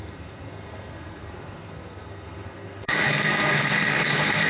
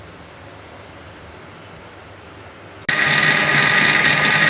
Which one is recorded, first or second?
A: second